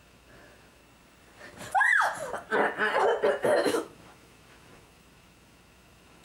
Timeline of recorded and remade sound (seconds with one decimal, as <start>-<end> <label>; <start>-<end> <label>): 0.0-0.8 remade; 0.8-3.3 recorded; 3.3-6.2 remade